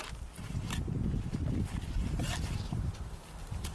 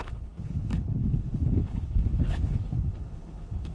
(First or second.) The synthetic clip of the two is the second